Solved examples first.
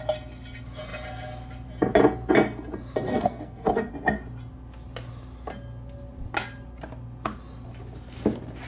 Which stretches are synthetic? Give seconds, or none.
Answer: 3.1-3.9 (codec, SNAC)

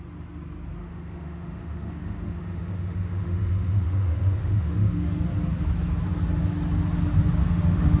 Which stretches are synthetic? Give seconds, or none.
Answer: 0.8-5.2 (autoencoder, DAC-VAE); 7.4-8.0

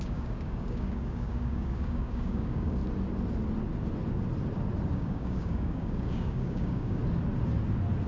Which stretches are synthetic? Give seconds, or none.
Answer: 0.0-2.8 (codec, DAC); 4.9-7.0

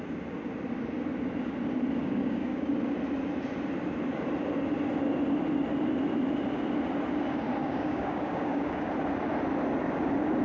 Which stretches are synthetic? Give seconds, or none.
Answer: 2.0-2.7 (codec, DAC); 7.6-8.9

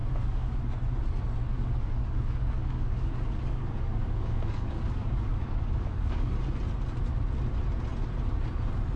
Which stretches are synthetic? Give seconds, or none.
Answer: 0.0-0.6 (codec, DAC); 1.4-6.3

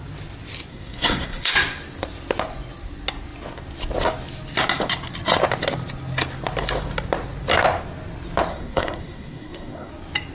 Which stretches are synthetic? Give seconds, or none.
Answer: 0.7-1.5 (codec, SNAC); 8.5-9.9

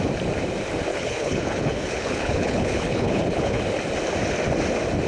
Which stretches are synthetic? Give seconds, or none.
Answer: 0.9-3.6 (codec, HILCodec)